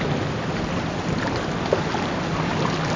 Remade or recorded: recorded